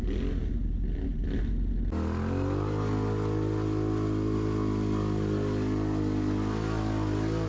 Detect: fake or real real